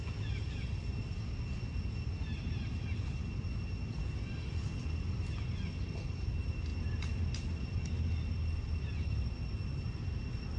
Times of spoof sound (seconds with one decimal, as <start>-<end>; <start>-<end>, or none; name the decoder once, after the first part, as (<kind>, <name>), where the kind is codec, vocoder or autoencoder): none